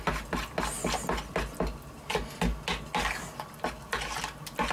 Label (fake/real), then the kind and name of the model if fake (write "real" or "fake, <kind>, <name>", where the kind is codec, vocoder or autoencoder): real